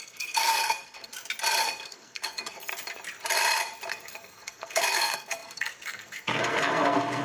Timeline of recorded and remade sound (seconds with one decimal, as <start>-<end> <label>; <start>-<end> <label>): 0.0-1.1 remade; 1.1-1.6 recorded; 1.6-2.7 remade; 2.7-3.9 recorded; 3.9-7.2 remade